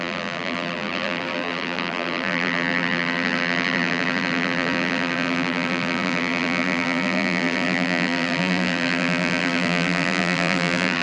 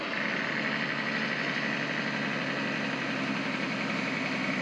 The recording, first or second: second